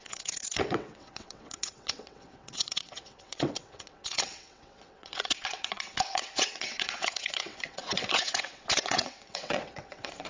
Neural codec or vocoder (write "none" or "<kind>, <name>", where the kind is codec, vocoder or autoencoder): vocoder, WaveNeXt